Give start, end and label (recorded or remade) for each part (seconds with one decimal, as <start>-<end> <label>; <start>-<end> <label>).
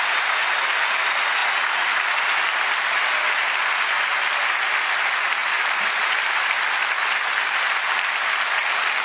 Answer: 0.0-9.0 recorded